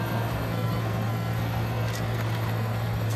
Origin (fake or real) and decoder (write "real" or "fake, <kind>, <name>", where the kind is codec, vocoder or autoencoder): fake, codec, SNAC